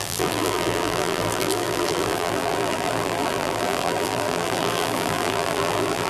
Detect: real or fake fake